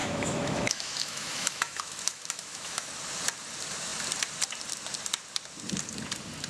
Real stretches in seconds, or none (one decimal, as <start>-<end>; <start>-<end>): 2.9-6.5